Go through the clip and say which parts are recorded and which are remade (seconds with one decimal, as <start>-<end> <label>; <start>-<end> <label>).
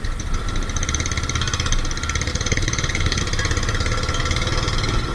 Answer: 0.0-2.3 recorded; 2.3-3.2 remade; 3.2-5.1 recorded